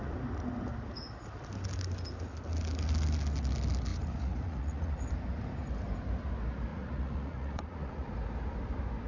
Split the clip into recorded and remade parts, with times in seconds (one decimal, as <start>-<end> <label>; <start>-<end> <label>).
0.0-3.9 recorded; 3.9-5.0 remade; 5.0-6.7 recorded; 6.7-8.1 remade; 8.1-9.1 recorded